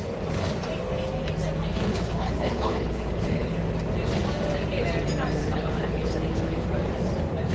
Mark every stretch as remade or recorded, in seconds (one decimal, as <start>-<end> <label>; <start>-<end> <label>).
0.0-1.9 recorded; 1.9-3.6 remade; 3.6-5.4 recorded; 5.4-6.6 remade; 6.6-7.5 recorded